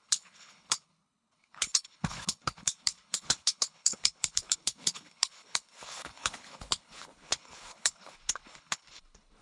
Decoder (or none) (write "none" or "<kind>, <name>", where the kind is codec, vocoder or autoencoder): codec, HILCodec